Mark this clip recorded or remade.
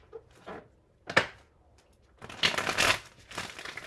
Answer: recorded